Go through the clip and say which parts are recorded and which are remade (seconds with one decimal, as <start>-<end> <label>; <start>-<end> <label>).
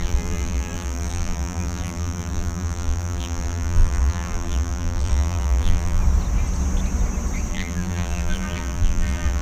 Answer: 0.0-6.0 remade; 6.0-7.5 recorded; 7.5-9.4 remade